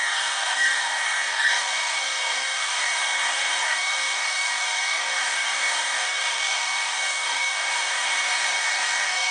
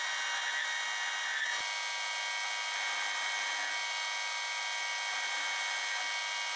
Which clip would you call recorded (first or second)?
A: second